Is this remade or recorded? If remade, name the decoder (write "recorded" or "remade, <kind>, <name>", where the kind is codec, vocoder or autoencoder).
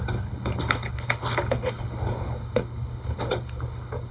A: remade, codec, HILCodec